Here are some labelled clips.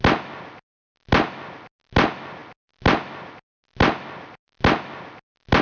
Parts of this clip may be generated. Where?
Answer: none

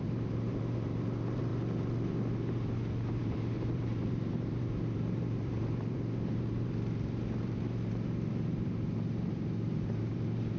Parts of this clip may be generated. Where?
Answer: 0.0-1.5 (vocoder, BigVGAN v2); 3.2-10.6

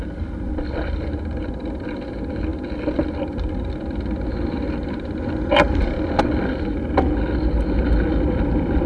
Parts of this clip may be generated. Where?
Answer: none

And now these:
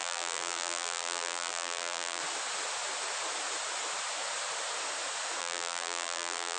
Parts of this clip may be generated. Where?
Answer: 0.0-2.2 (vocoder, BigVGAN v2); 5.4-6.6

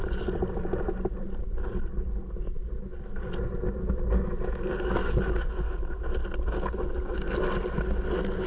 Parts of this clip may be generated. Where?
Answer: none

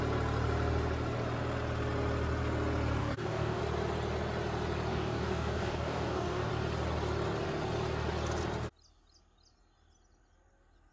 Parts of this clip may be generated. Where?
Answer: 3.0-3.6 (codec, DAC); 4.9-6.5

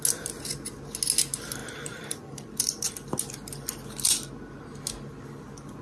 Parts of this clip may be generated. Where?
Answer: 1.6-2.9 (vocoder, BigVGAN v2)

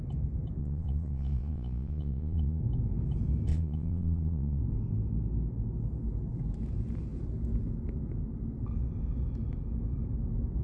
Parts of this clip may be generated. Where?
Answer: 0.6-2.6 (vocoder, Vocos); 3.5-4.6